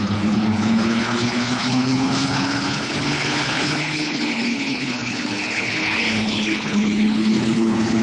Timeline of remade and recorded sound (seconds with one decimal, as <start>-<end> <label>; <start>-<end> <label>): 0.0-8.0 remade

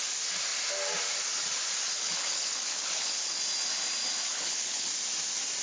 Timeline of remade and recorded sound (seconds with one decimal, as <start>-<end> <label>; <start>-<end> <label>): 0.0-1.8 recorded; 1.8-3.4 remade; 3.4-4.3 recorded; 4.3-4.9 remade; 4.9-5.6 recorded

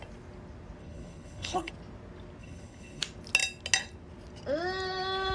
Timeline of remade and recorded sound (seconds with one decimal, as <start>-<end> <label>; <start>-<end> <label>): 0.0-0.8 recorded; 0.8-1.7 remade; 1.7-2.4 recorded; 2.4-3.0 remade; 3.0-5.3 recorded

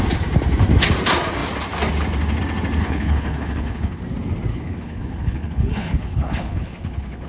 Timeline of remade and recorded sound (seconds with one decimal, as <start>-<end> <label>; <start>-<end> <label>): 0.0-2.8 recorded; 2.8-4.0 remade; 4.0-4.5 recorded; 4.5-7.3 remade

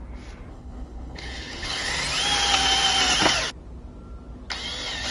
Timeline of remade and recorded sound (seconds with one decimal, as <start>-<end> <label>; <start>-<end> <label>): 0.0-0.5 recorded; 0.5-1.9 remade; 1.9-5.1 recorded

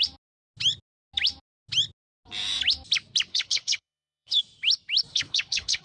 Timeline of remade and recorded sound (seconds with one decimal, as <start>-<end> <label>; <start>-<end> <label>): 0.0-3.3 recorded; 3.3-4.4 remade; 4.4-5.1 recorded; 5.1-5.8 remade

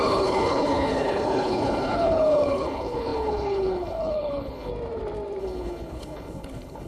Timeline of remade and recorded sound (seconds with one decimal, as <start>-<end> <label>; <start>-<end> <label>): 0.0-4.7 remade; 4.7-5.4 recorded; 5.4-6.9 remade